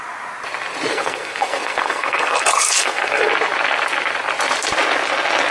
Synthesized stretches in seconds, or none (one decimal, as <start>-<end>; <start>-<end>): 0.9-3.3